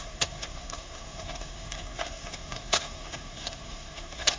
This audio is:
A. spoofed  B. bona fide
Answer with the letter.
A